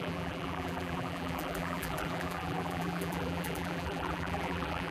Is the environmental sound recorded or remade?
remade